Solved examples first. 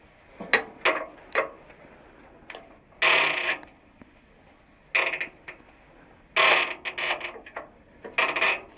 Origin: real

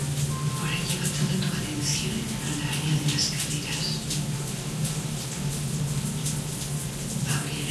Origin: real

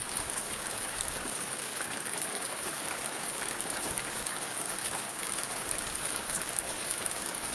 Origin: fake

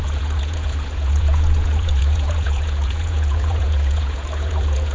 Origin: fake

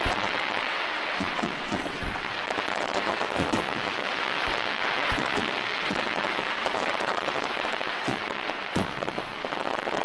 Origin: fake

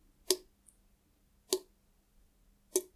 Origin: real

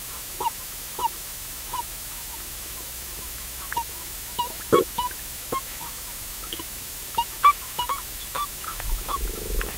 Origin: fake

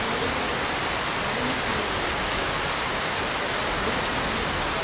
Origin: real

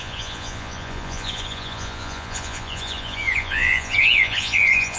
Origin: fake